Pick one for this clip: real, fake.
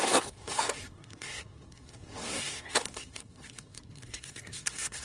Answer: fake